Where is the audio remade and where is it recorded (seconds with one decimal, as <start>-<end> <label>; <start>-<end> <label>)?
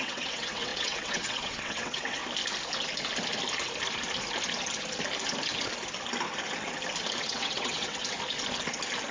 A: 0.0-2.2 remade; 2.2-7.2 recorded; 7.2-8.0 remade; 8.0-9.1 recorded